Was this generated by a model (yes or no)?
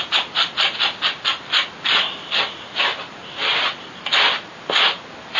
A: no